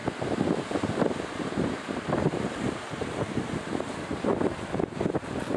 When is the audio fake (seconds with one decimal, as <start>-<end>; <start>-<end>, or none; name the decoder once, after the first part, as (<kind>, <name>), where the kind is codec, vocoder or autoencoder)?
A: 0.0-3.3 (vocoder, BigVGAN v2)